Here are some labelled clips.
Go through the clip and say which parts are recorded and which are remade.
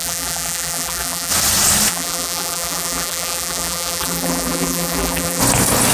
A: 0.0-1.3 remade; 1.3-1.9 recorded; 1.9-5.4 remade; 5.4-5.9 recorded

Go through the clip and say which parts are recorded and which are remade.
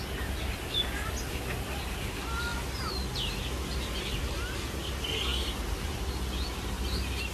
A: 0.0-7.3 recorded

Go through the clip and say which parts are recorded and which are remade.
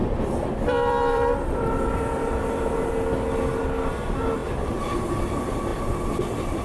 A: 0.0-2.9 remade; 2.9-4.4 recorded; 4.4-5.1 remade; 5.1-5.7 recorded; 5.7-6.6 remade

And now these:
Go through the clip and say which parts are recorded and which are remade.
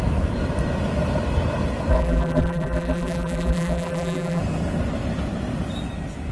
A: 0.0-1.9 recorded; 1.9-4.4 remade; 4.4-6.3 recorded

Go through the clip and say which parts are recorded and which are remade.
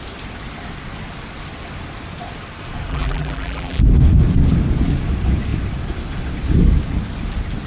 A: 0.0-2.9 recorded; 2.9-3.8 remade; 3.8-7.7 recorded